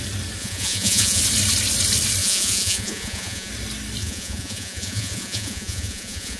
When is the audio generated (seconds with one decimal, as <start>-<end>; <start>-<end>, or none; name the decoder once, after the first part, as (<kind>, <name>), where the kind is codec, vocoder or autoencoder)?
0.4-1.2 (vocoder, Vocos); 2.2-3.5; 4.0-6.4